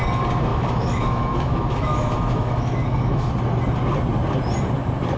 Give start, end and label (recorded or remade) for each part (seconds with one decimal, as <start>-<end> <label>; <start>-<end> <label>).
0.0-0.5 recorded; 0.5-3.3 remade; 3.3-5.2 recorded